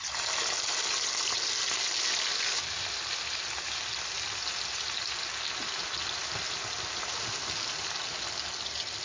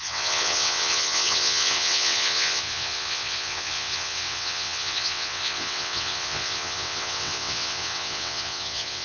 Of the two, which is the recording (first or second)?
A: first